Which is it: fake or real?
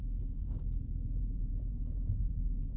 fake